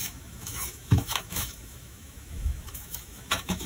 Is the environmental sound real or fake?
fake